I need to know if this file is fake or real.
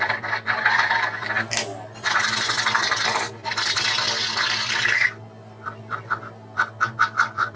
real